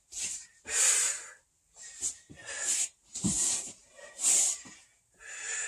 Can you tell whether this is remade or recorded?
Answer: remade